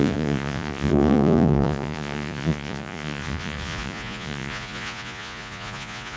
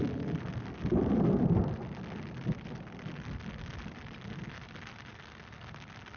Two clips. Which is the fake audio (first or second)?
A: first